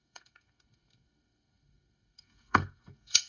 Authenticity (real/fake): fake